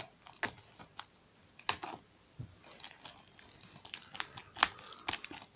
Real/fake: real